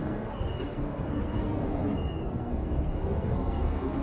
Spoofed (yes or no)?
yes